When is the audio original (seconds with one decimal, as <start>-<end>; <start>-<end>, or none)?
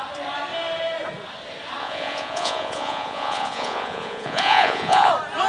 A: 0.0-1.8; 5.1-5.5